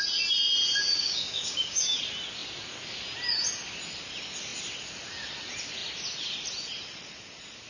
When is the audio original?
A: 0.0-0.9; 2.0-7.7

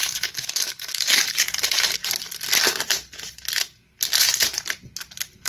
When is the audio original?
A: 2.0-5.5

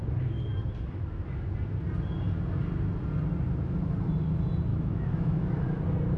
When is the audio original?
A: 0.0-4.7; 5.5-6.2

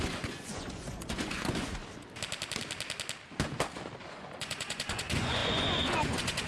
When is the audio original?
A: 1.8-4.1

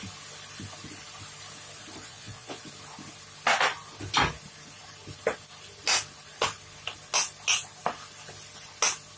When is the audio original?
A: 0.0-2.0; 2.6-9.2

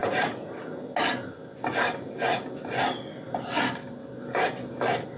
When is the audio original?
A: 0.0-5.2

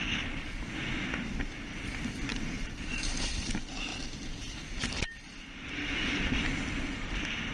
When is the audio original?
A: 0.0-2.3; 3.5-7.5

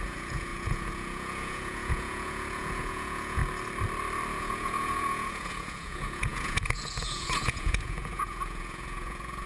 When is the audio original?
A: 3.4-4.4